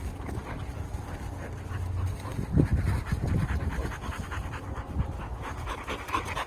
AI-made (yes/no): no